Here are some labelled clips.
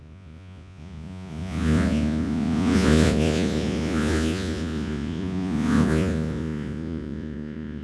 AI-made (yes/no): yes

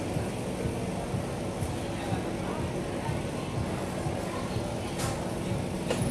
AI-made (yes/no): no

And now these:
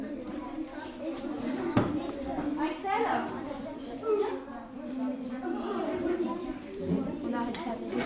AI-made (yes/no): yes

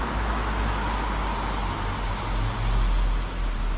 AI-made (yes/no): no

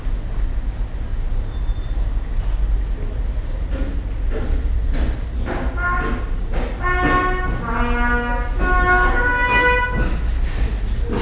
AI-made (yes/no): no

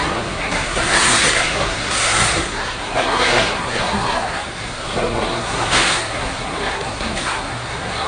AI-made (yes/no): yes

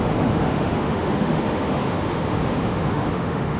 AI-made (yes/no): yes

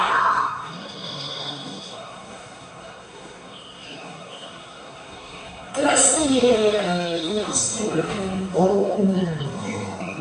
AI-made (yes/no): yes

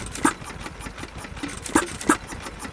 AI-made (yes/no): no